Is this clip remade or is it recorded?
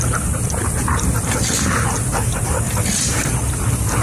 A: recorded